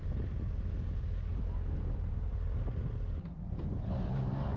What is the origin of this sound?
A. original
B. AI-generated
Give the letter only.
A